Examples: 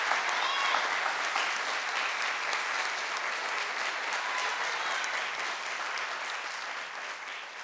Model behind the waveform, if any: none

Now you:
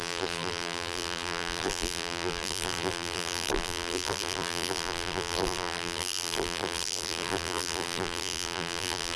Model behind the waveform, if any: vocoder, BigVGAN v2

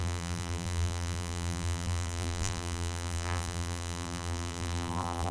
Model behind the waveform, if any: vocoder, BigVGAN v2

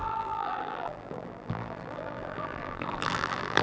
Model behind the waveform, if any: vocoder, BigVGAN v2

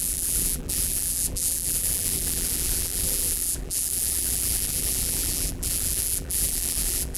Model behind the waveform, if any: vocoder, BigVGAN v2